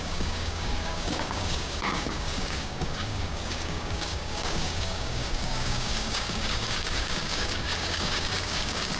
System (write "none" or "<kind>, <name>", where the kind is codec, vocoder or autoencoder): codec, DAC